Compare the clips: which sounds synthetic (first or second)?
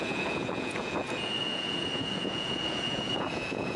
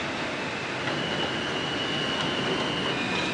first